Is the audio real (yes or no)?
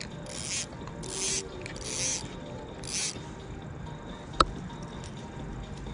yes